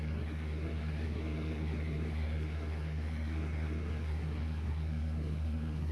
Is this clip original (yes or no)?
no